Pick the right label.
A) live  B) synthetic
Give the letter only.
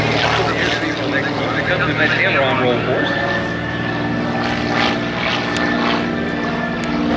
A